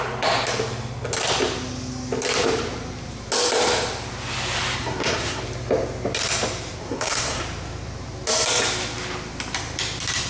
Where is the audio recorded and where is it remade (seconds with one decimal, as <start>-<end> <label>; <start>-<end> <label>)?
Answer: 0.0-4.8 recorded; 4.8-5.4 remade; 5.4-6.8 recorded; 6.8-7.4 remade; 7.4-10.3 recorded